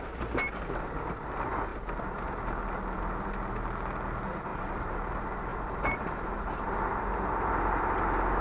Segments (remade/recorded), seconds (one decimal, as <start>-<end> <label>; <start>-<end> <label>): 0.0-4.5 recorded; 4.5-5.0 remade; 5.0-5.5 recorded; 5.5-6.1 remade; 6.1-8.4 recorded

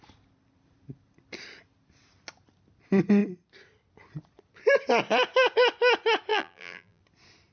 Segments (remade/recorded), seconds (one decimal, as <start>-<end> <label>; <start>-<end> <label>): 0.0-6.3 recorded; 6.3-7.0 remade; 7.0-7.5 recorded

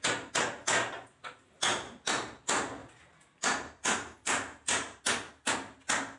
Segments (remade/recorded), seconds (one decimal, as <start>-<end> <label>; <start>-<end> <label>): 0.0-1.7 recorded; 1.7-2.3 remade; 2.3-2.8 recorded; 2.8-5.0 remade; 5.0-6.2 recorded

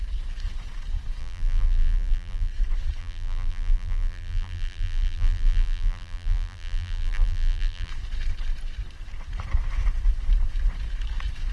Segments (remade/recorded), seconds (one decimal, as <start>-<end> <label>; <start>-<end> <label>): 0.0-1.2 recorded; 1.2-2.5 remade; 2.5-3.0 recorded; 3.0-7.9 remade; 7.9-11.5 recorded

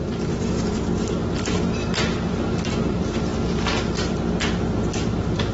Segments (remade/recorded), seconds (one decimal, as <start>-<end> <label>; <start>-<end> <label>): 0.0-1.2 remade; 1.2-2.0 recorded; 2.0-3.3 remade; 3.3-4.9 recorded; 4.9-5.5 remade

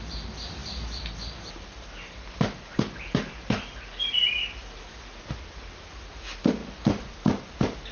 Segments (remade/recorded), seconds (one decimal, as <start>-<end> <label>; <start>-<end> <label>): 0.0-7.9 recorded